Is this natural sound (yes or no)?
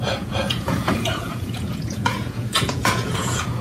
no